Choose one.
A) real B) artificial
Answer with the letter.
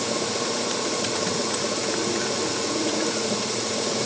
B